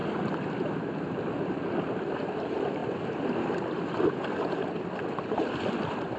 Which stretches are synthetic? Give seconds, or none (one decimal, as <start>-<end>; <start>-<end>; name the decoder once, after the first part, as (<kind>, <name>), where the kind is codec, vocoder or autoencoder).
1.7-6.2 (vocoder, BigVGAN v2)